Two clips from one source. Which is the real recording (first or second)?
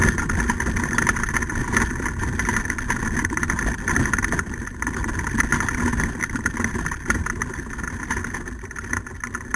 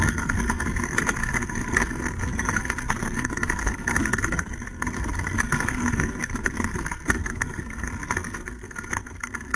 first